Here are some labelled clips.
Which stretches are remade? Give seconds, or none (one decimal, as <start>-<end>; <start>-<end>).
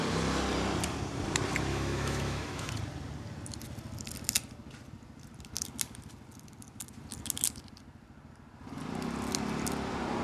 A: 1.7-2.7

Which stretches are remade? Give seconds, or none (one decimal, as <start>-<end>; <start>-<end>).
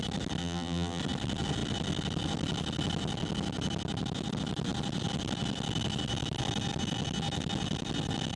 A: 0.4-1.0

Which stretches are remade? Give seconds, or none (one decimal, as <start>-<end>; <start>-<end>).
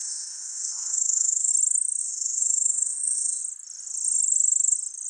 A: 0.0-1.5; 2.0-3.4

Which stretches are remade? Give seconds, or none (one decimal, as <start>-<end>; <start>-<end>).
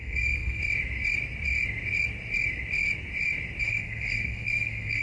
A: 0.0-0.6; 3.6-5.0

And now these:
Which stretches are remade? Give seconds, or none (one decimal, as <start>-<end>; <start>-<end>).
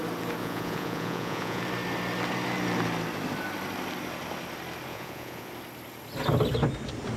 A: 0.4-1.6; 4.9-5.5